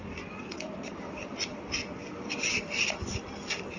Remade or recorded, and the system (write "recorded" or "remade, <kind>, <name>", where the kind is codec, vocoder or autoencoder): recorded